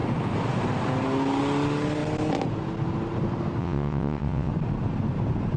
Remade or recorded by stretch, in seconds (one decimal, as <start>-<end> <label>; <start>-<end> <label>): 0.0-3.6 recorded; 3.6-4.5 remade; 4.5-5.6 recorded